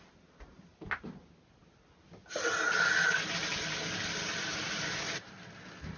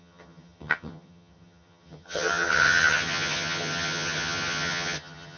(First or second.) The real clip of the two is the first